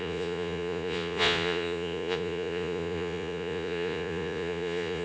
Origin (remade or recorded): remade